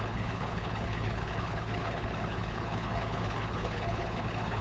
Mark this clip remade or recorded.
remade